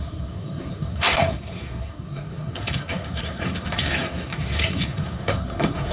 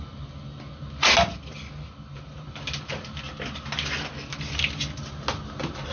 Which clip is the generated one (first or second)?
first